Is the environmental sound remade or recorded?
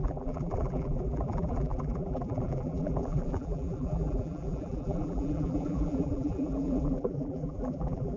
remade